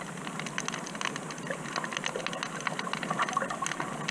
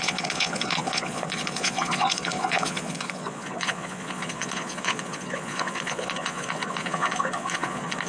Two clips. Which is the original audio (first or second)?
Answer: first